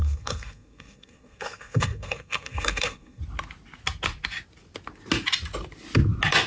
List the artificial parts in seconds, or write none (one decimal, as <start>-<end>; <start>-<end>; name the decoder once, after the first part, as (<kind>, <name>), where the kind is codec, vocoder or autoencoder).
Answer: 0.0-3.2 (codec, SNAC)